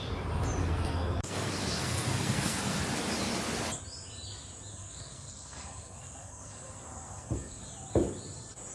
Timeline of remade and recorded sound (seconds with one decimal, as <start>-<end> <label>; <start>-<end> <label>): 0.0-0.6 recorded; 0.6-2.8 remade; 2.8-4.7 recorded; 4.7-7.6 remade; 7.6-8.7 recorded